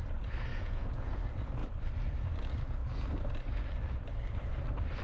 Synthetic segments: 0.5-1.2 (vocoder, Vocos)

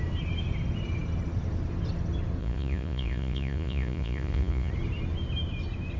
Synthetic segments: 2.4-4.7 (vocoder, Vocos)

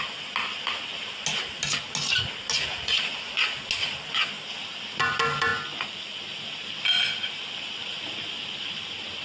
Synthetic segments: none

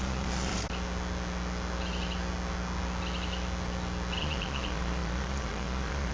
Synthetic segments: 0.0-0.5 (vocoder, Vocos); 4.2-6.1

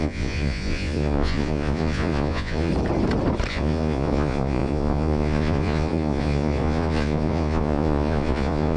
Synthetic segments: 0.0-2.7 (vocoder, Vocos); 3.5-8.8

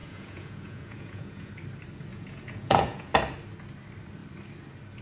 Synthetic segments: 0.0-1.5 (vocoder, Vocos); 2.1-3.1